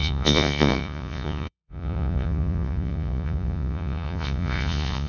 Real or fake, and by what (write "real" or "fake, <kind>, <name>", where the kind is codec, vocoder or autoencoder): fake, vocoder, Vocos